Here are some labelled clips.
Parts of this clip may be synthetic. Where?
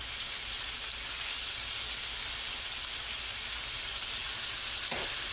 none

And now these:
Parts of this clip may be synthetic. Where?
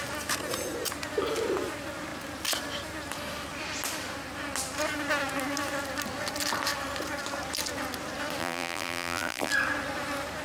8.4-9.5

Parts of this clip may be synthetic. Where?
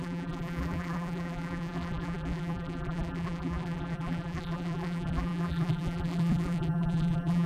0.0-7.5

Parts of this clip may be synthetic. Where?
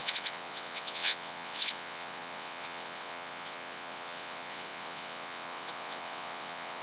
0.0-6.8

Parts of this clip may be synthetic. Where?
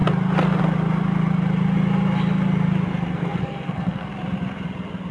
3.1-4.1